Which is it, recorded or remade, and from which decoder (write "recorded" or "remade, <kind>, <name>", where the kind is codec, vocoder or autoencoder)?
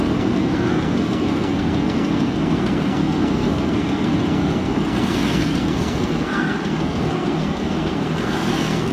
remade, codec, SNAC